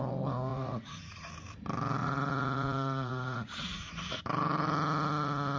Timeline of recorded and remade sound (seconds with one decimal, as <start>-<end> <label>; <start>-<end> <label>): 0.0-0.5 recorded; 0.5-1.3 remade; 1.3-2.0 recorded; 2.0-4.2 remade; 4.2-5.6 recorded